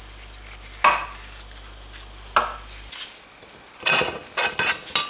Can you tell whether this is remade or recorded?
recorded